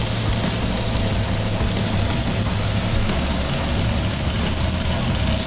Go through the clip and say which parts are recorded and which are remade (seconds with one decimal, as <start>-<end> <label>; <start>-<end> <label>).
0.0-5.5 recorded